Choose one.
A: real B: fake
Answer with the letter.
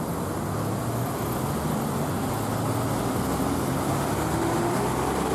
A